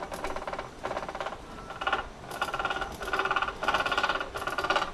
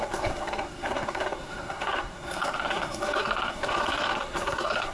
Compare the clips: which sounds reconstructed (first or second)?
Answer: second